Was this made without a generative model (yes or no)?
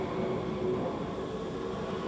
yes